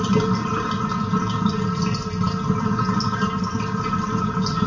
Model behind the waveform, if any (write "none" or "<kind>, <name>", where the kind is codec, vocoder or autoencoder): none